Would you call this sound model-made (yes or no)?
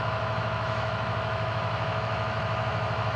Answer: yes